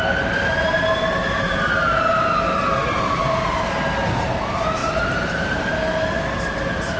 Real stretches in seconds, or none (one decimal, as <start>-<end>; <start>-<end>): 0.0-1.2; 2.0-3.2; 3.7-4.8; 5.7-7.0